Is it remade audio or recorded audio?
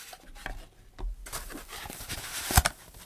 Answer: recorded